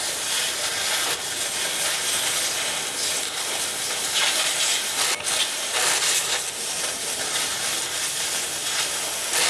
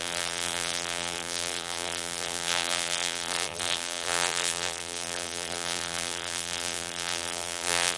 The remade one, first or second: second